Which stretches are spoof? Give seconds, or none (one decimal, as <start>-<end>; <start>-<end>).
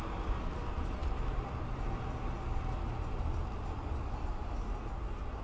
none